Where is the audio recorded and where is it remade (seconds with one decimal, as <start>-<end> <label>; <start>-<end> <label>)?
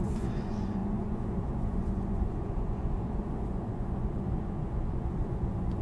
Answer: 0.0-5.8 remade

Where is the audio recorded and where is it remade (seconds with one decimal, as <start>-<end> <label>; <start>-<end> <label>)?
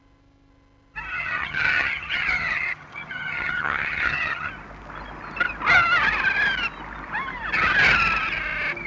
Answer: 0.0-1.1 recorded; 1.1-4.5 remade; 4.5-8.9 recorded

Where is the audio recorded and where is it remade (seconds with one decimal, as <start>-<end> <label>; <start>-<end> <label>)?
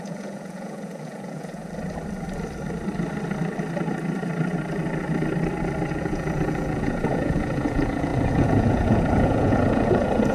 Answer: 0.0-1.6 remade; 1.6-5.9 recorded; 5.9-10.3 remade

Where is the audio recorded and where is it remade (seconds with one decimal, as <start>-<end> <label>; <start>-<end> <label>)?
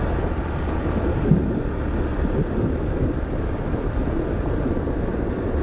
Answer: 0.0-5.6 recorded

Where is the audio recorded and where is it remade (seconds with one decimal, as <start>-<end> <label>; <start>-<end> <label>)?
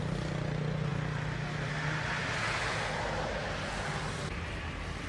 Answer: 0.0-5.1 recorded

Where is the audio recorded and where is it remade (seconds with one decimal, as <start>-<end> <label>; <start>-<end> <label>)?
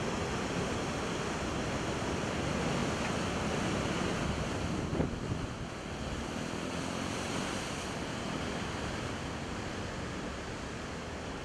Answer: 0.0-11.4 recorded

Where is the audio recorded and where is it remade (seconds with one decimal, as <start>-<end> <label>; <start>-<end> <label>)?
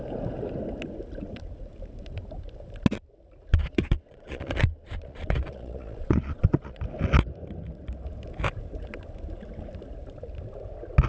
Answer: 0.0-3.5 recorded; 3.5-6.8 remade; 6.8-11.1 recorded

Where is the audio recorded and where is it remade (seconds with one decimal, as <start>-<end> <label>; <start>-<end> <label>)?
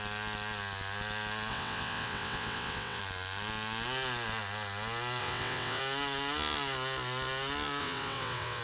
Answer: 0.0-1.5 recorded; 1.5-3.0 remade; 3.0-5.2 recorded; 5.2-5.8 remade; 5.8-7.8 recorded; 7.8-8.6 remade